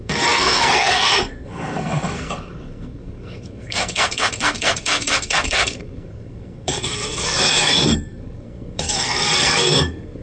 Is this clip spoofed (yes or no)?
yes